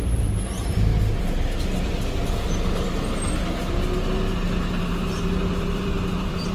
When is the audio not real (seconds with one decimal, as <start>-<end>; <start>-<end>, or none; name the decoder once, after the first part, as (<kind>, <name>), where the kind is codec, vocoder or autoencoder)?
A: 0.0-0.9 (vocoder, BigVGAN v2); 4.8-6.5